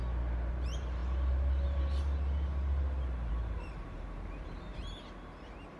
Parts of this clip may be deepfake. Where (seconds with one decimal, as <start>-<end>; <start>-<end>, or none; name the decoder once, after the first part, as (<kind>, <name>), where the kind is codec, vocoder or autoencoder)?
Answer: 0.5-1.0 (vocoder, BigVGAN v2); 3.3-4.7